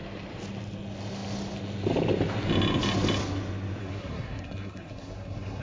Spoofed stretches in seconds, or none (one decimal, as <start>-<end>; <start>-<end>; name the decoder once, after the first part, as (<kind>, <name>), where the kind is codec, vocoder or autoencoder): 3.8-5.6 (codec, SNAC)